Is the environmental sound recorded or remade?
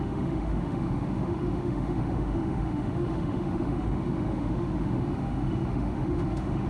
remade